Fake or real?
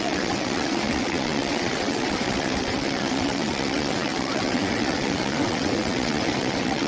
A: fake